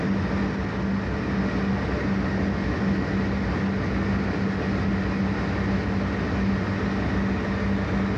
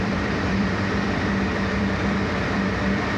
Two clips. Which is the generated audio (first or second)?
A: second